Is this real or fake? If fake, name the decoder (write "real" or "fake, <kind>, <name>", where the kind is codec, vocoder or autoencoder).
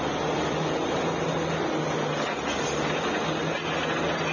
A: real